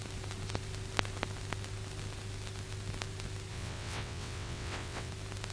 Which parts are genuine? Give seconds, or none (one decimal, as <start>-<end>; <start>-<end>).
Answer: 0.0-3.5; 5.1-5.5